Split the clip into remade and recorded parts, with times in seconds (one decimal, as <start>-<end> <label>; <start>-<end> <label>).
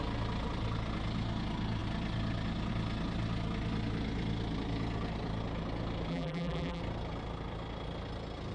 0.0-6.1 recorded; 6.1-6.8 remade; 6.8-8.5 recorded